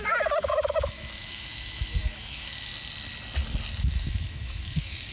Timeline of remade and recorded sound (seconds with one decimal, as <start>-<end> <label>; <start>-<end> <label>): 0.0-2.7 remade; 2.7-3.8 recorded; 3.8-5.1 remade